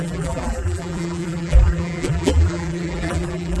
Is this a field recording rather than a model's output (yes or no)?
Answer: no